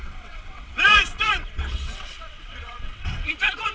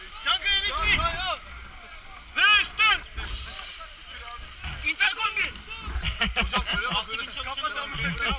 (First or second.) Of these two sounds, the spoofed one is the first